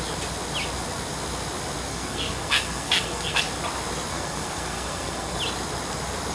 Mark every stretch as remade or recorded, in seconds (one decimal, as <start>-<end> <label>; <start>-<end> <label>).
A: 0.0-1.9 recorded; 1.9-3.4 remade; 3.4-4.1 recorded; 4.1-5.4 remade; 5.4-6.3 recorded

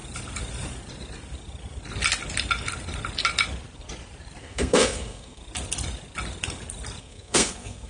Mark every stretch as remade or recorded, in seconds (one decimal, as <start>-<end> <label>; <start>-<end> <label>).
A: 0.0-4.4 recorded; 4.4-5.4 remade; 5.4-7.0 recorded; 7.0-7.9 remade

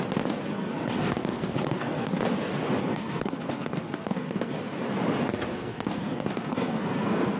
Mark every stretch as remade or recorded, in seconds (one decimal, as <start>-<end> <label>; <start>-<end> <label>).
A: 0.0-0.5 recorded; 0.5-2.2 remade; 2.2-2.8 recorded; 2.8-4.5 remade; 4.5-5.5 recorded; 5.5-7.4 remade

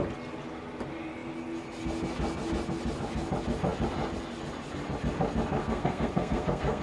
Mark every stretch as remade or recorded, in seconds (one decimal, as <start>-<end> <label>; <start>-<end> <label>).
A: 0.0-5.6 recorded; 5.6-6.8 remade

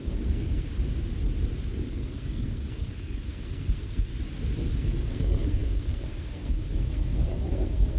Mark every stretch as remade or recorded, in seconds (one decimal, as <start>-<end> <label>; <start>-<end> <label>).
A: 0.0-0.7 remade; 0.7-1.9 recorded; 1.9-4.1 remade; 4.1-4.8 recorded; 4.8-8.0 remade

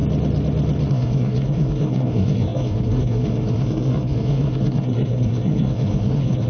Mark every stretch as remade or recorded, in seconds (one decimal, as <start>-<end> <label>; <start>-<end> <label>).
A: 0.0-0.9 recorded; 0.9-6.5 remade

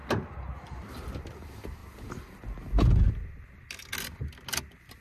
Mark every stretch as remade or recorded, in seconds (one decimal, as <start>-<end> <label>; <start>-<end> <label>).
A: 0.0-5.0 recorded